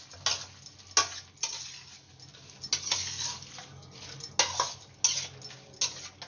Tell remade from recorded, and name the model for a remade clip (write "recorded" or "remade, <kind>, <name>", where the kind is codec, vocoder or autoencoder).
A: recorded